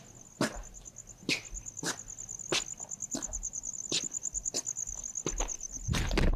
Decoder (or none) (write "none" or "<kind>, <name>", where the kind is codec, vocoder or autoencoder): none